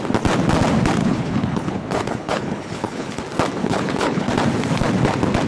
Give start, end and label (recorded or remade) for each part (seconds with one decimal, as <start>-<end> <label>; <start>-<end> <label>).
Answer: 0.0-1.0 recorded; 1.0-3.2 remade; 3.2-3.6 recorded; 3.6-4.3 remade; 4.3-5.5 recorded